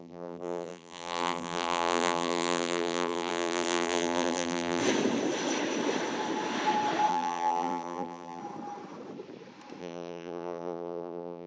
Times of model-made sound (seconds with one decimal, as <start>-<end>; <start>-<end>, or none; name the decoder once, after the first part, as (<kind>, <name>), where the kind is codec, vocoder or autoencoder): 0.0-4.8 (vocoder, BigVGAN v2); 7.1-8.4; 9.8-11.5